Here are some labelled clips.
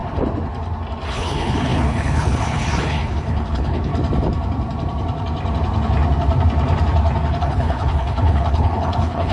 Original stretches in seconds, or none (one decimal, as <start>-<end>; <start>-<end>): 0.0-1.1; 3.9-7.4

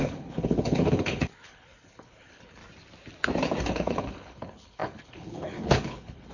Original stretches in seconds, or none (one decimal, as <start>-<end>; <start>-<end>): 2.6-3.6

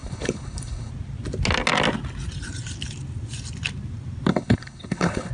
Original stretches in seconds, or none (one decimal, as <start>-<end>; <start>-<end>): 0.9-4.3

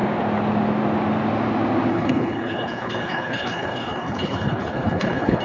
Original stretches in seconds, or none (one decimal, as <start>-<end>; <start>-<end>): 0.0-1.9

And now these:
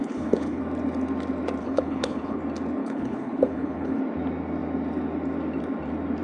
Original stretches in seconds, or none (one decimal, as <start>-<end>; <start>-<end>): 0.6-1.6; 2.4-2.8; 4.0-6.2